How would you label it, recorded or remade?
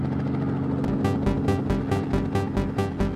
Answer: recorded